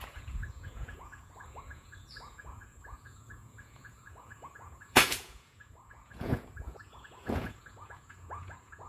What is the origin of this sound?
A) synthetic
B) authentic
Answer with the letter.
A